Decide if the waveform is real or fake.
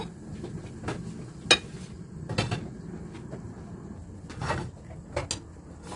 real